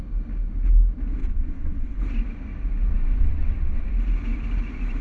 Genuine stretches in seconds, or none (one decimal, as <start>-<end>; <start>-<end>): 0.0-1.2; 2.0-2.9; 3.9-5.0